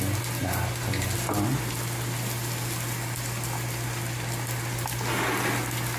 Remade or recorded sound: recorded